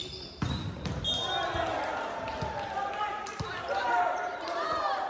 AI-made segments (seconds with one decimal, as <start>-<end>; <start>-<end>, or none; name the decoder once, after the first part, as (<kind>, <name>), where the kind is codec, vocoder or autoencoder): 3.2-5.1 (vocoder, BigVGAN v2)